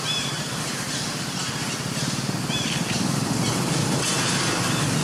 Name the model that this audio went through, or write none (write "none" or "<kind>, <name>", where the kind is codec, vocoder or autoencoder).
vocoder, BigVGAN v2